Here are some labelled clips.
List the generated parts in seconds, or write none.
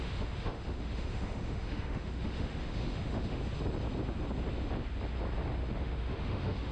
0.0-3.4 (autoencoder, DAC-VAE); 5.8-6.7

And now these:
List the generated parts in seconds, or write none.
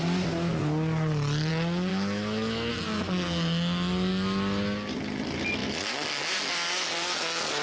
1.9-2.7 (autoencoder, DAC-VAE)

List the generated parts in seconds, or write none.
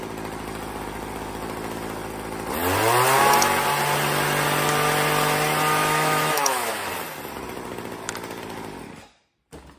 5.8-6.9 (autoencoder, DAC-VAE)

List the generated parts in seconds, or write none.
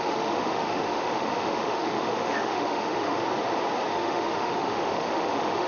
0.0-3.2 (autoencoder, DAC-VAE); 3.9-5.7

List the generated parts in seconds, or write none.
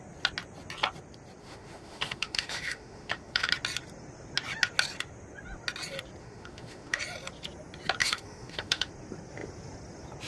1.4-3.5 (autoencoder, DAC-VAE); 6.2-7.0; 8.0-8.9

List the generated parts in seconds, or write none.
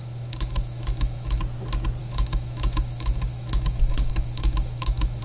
0.0-1.4 (autoencoder, DAC-VAE); 2.0-5.2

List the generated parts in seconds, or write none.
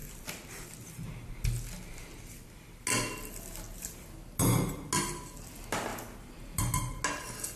none